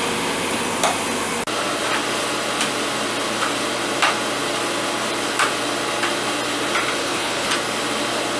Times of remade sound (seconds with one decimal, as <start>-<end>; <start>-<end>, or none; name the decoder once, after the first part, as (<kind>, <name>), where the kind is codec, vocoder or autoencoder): 7.0-7.5 (codec, HILCodec)